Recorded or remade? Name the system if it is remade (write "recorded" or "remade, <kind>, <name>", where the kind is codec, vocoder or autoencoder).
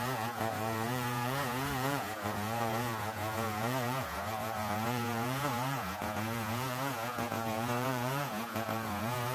remade, vocoder, Vocos